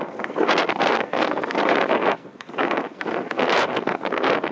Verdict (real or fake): fake